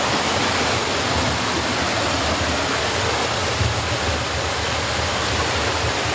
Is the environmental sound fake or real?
real